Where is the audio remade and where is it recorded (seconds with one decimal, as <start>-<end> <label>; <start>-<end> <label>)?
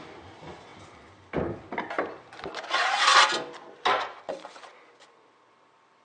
0.0-6.0 recorded